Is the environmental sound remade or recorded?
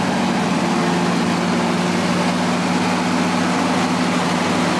recorded